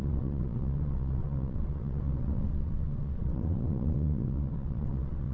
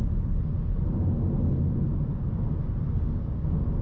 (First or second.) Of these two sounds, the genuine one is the second